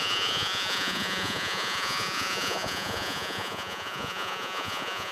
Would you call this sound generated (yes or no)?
yes